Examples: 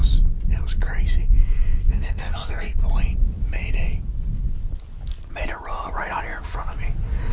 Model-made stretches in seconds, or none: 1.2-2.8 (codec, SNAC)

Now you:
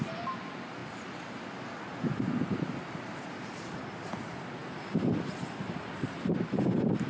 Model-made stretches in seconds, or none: none

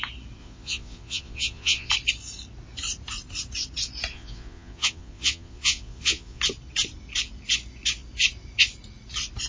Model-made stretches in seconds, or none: 0.4-1.9 (vocoder, Vocos); 4.1-6.4

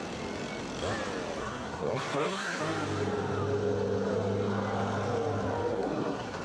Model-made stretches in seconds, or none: 1.4-2.6 (codec, SNAC); 5.7-6.4

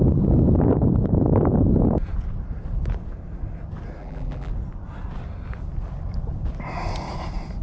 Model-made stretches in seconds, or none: 4.0-4.5 (vocoder, BigVGAN v2)

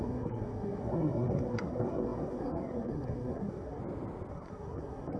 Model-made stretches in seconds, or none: 0.0-3.8 (codec, SNAC); 4.3-5.2

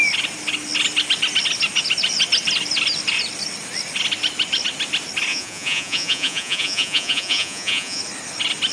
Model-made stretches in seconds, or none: 5.3-8.0 (vocoder, Vocos)